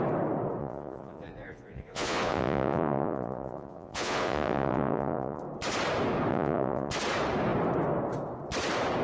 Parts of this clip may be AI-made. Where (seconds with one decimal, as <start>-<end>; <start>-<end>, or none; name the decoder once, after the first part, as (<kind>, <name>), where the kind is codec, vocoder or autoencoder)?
0.6-5.4 (vocoder, Vocos); 6.3-6.9